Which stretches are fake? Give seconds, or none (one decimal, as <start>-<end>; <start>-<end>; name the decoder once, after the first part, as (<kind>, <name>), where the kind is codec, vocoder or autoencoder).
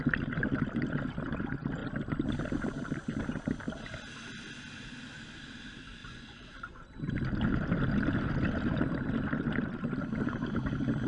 6.0-7.0 (vocoder, Vocos)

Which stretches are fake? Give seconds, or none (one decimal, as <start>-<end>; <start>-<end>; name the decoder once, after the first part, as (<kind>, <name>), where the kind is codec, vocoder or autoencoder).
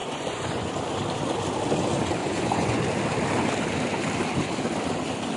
0.0-0.7 (vocoder, Vocos); 2.2-2.8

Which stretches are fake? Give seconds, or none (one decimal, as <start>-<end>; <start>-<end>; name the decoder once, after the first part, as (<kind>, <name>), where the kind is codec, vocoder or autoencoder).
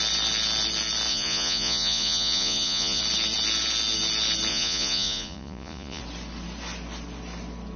1.1-3.0 (vocoder, Vocos); 4.5-6.0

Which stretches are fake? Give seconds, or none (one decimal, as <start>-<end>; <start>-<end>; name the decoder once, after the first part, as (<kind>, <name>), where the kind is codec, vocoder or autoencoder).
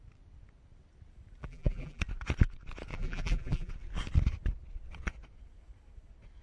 1.4-2.0 (vocoder, BigVGAN v2); 2.9-3.7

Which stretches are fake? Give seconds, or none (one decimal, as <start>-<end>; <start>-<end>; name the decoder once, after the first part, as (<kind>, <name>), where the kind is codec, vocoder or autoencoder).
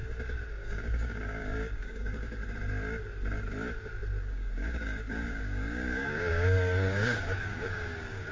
0.5-2.4 (codec, DAC); 4.2-8.3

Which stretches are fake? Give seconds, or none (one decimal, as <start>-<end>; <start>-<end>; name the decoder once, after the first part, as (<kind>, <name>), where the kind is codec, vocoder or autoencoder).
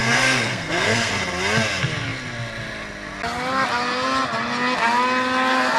0.0-1.1 (codec, SNAC)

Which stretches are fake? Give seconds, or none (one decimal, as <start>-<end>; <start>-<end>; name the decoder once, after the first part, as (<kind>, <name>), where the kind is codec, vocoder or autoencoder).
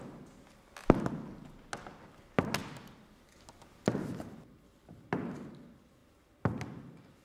none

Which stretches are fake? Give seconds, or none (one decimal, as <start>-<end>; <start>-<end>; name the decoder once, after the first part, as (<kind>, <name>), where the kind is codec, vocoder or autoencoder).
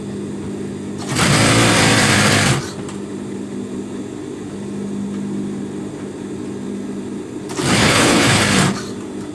7.8-8.4 (codec, HILCodec)